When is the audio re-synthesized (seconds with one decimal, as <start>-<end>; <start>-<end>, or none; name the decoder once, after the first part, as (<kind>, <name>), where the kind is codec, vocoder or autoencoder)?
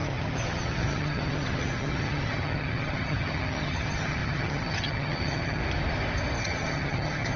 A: 0.0-5.6 (vocoder, HiFi-GAN); 6.4-7.4